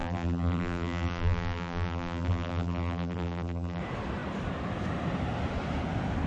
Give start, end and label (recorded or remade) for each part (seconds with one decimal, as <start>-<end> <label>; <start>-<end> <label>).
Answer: 0.0-3.8 remade; 3.8-6.3 recorded